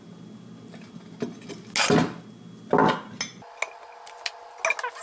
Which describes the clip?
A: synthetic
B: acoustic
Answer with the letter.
B